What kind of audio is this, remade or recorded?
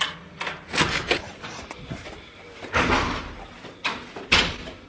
recorded